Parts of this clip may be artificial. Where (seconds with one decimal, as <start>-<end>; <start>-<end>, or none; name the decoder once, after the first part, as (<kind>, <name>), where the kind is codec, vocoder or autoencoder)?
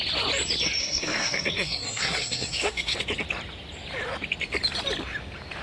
0.8-3.0 (codec, SNAC)